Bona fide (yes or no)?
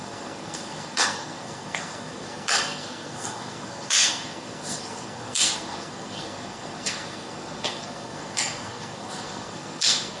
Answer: no